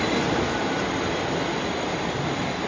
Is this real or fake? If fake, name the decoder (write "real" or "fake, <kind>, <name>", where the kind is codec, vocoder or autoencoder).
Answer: real